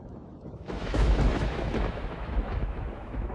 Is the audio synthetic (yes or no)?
yes